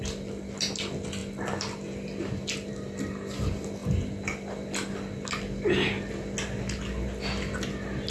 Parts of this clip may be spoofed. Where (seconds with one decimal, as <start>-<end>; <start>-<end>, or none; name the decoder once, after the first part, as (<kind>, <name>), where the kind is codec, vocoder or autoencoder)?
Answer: none